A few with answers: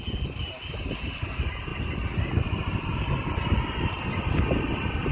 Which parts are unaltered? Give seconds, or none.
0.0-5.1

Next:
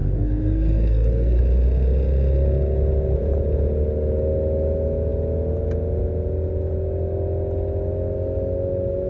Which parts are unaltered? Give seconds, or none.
1.4-9.1